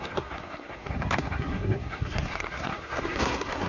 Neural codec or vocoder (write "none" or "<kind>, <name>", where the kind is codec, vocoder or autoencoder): codec, SNAC